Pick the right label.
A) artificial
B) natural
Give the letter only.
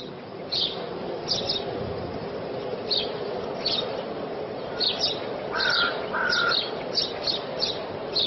B